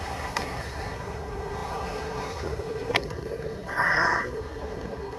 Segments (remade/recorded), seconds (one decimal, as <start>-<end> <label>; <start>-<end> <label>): 0.0-5.2 remade